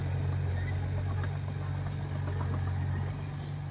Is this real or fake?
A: real